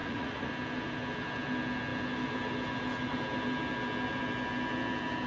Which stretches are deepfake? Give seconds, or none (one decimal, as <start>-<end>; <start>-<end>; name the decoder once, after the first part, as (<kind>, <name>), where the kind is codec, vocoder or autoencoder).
0.0-0.5 (vocoder, Vocos)